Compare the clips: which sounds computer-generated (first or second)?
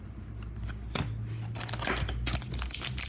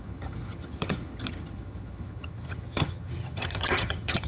second